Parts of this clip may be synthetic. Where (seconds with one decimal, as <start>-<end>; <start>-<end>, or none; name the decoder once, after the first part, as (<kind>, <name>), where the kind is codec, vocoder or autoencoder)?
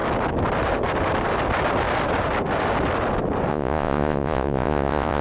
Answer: 3.5-5.2 (vocoder, Vocos)